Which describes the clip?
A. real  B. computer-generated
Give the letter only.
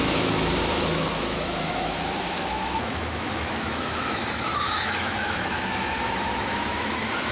B